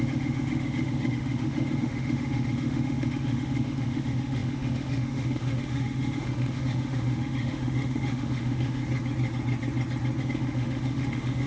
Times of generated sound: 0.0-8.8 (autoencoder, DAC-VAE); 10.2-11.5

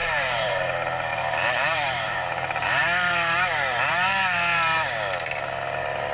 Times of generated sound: 0.0-0.5 (vocoder, BigVGAN v2); 1.1-4.8

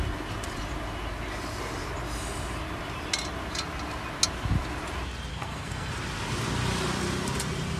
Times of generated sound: 5.3-5.9 (codec, SNAC)

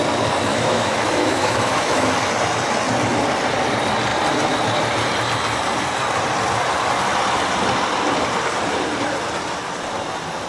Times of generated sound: 0.5-2.1 (autoencoder, DAC-VAE)

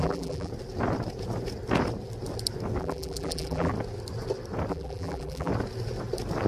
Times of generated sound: 0.0-0.5 (vocoder, BigVGAN v2); 2.8-3.7; 4.7-5.5